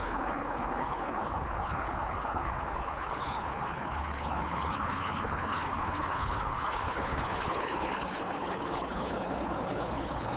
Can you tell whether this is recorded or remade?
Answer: remade